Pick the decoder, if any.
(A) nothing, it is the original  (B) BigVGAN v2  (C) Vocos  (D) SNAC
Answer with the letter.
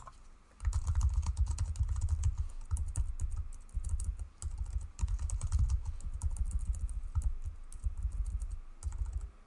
A